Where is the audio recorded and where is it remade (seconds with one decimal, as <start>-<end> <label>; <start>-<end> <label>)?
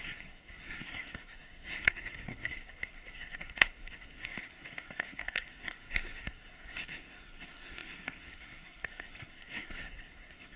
0.0-10.6 remade